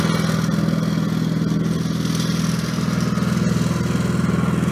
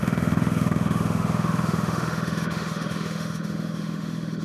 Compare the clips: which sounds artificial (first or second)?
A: second